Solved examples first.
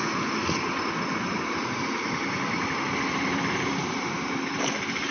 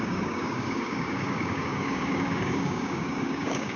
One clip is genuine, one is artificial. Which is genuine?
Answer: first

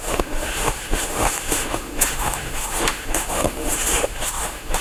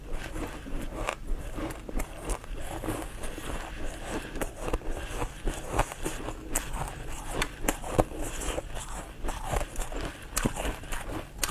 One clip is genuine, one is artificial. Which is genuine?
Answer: second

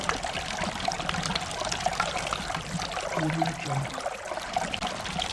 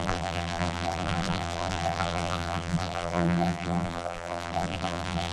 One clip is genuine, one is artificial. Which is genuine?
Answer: first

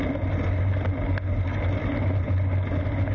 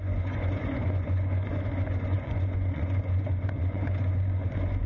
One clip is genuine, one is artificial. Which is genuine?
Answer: first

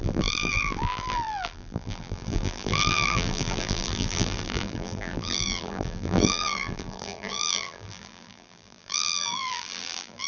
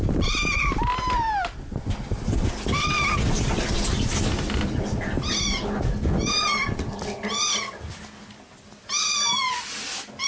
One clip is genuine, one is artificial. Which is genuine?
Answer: second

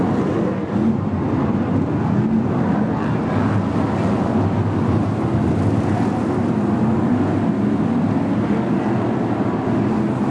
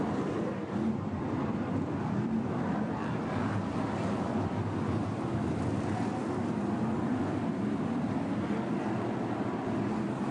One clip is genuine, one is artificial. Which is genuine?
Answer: first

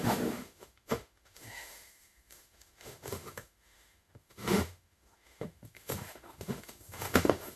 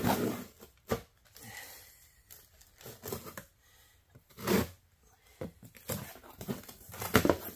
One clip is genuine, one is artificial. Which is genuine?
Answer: second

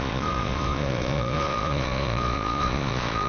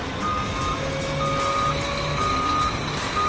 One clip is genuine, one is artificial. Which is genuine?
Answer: second